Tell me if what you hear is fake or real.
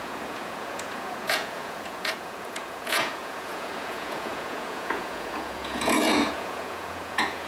fake